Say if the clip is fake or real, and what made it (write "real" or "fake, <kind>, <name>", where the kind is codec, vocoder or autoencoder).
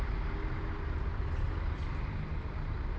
real